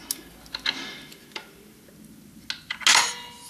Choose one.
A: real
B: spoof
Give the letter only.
A